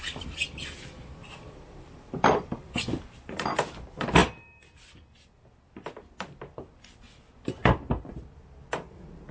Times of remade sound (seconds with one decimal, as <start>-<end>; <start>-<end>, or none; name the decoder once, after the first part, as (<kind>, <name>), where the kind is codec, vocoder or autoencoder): 1.2-3.2 (vocoder, BigVGAN v2)